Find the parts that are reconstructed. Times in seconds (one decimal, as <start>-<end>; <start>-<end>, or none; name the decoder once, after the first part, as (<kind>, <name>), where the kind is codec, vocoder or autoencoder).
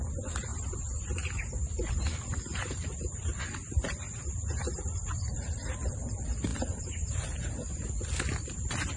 0.5-1.9 (vocoder, BigVGAN v2); 2.5-3.4; 6.5-7.9